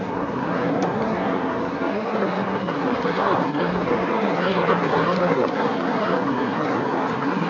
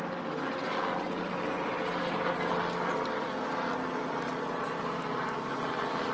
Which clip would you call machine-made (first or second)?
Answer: first